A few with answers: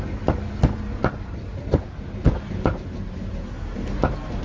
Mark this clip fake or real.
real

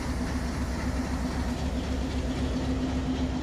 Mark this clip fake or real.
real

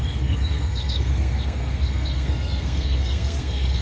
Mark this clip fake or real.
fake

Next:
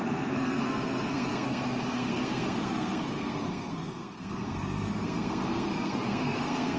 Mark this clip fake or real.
fake